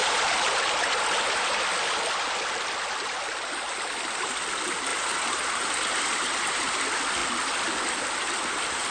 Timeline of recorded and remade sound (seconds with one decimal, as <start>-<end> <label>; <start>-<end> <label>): 0.0-1.0 remade; 1.0-4.9 recorded; 4.9-5.9 remade; 5.9-8.9 recorded